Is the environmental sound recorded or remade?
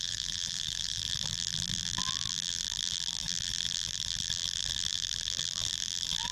remade